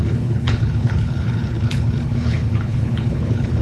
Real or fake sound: fake